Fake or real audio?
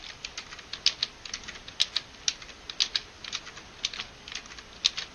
real